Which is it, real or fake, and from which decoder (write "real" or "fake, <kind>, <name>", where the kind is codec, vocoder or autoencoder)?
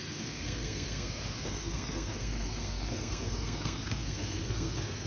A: fake, codec, SNAC